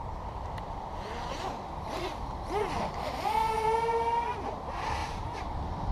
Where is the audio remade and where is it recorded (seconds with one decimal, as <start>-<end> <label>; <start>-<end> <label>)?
0.0-5.0 recorded; 5.0-5.9 remade